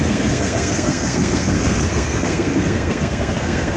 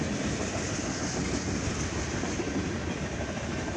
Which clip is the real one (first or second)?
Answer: second